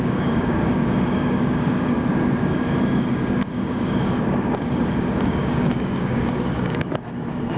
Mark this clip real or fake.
fake